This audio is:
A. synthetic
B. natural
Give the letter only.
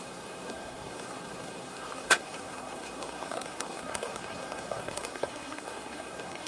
A